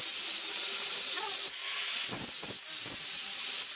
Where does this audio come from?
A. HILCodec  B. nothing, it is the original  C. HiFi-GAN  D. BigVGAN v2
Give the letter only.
B